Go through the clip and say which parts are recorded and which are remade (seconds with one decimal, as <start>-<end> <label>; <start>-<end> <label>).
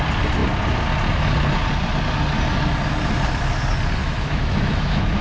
0.0-4.0 recorded; 4.0-5.2 remade